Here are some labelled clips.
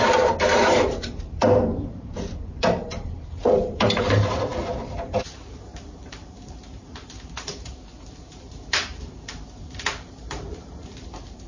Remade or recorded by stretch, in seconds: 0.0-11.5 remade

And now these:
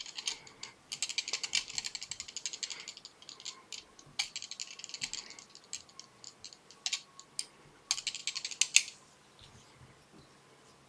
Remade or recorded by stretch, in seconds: 0.0-10.9 recorded

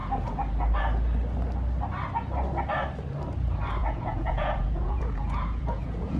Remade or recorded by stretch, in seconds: 0.0-3.8 recorded; 3.8-6.2 remade